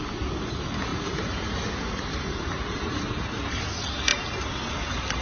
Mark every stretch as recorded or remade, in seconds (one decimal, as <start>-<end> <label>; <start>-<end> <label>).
0.0-0.9 recorded; 0.9-3.6 remade; 3.6-4.1 recorded; 4.1-4.7 remade; 4.7-5.2 recorded